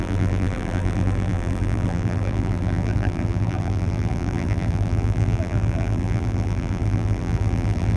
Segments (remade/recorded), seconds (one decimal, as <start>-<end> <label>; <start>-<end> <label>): 0.0-8.0 remade